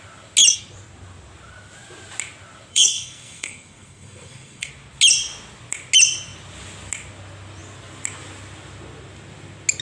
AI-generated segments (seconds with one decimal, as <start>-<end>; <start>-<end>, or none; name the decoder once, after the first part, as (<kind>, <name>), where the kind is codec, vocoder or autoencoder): 2.7-4.7 (codec, SNAC)